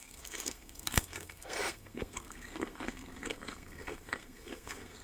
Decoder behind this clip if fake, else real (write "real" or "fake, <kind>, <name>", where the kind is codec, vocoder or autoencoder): fake, codec, SNAC